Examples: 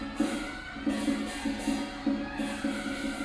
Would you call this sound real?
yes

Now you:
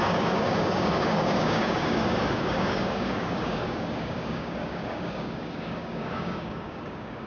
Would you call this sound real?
no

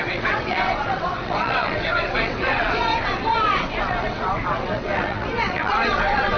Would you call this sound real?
no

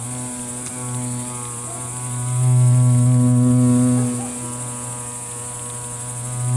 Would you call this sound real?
yes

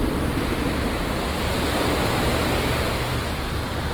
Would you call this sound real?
yes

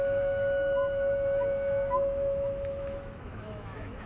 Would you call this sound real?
no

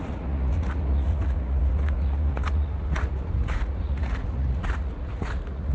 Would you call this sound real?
no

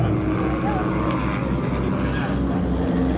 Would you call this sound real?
yes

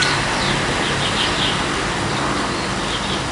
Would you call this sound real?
yes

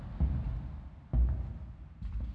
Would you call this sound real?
yes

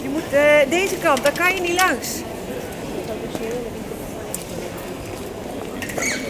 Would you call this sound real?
yes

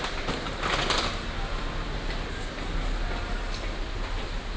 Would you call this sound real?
yes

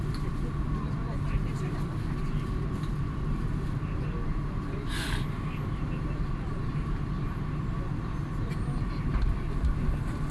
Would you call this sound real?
yes